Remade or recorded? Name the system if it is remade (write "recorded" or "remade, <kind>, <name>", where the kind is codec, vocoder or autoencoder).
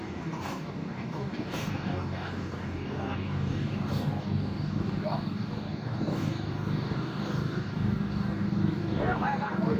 remade, codec, DAC